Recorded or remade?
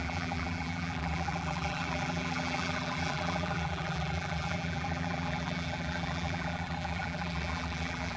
remade